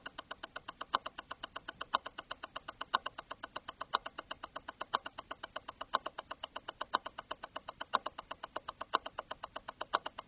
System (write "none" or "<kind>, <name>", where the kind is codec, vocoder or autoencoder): none